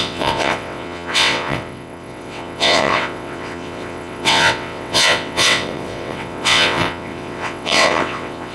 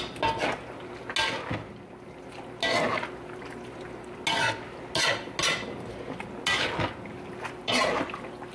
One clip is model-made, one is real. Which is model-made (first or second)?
first